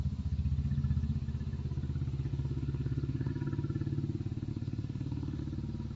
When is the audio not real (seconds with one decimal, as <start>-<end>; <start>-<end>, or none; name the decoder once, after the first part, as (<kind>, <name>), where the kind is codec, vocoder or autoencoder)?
2.3-3.3 (autoencoder, DAC-VAE); 4.5-5.4